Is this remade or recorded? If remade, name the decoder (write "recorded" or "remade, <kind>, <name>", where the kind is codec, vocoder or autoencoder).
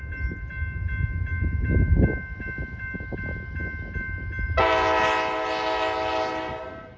recorded